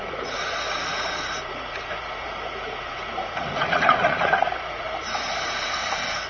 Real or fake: fake